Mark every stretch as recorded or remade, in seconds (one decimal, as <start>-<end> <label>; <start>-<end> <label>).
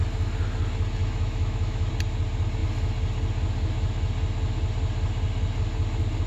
0.0-1.0 recorded; 1.0-1.9 remade; 1.9-6.3 recorded